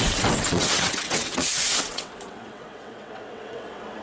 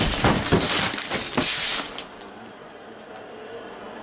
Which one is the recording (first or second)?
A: second